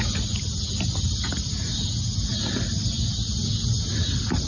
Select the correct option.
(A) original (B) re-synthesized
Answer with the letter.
A